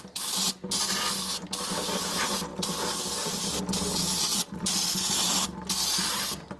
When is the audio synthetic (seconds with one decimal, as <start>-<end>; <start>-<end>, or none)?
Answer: none